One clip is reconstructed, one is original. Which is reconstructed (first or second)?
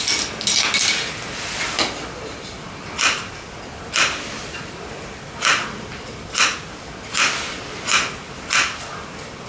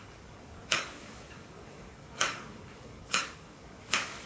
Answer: second